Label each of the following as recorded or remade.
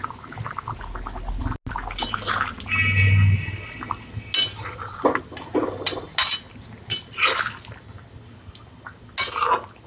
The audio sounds recorded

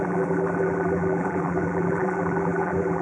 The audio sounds remade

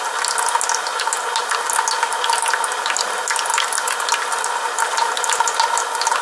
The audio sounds recorded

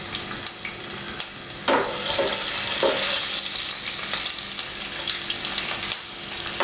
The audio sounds recorded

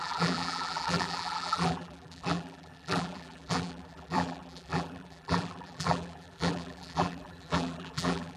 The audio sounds remade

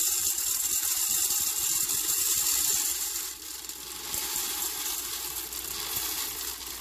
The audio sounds remade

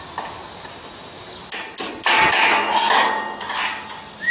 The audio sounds recorded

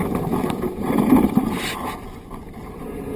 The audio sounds recorded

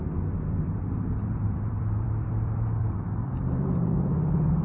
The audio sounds remade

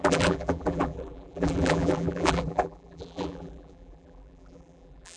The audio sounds remade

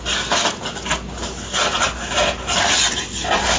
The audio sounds remade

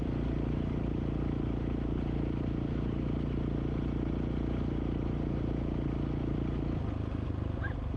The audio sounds recorded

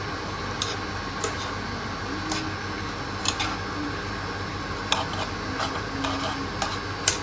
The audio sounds recorded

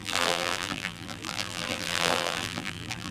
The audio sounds remade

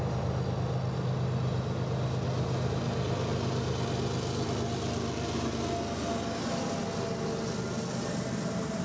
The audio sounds recorded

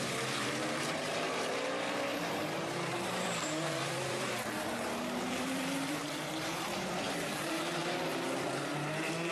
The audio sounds remade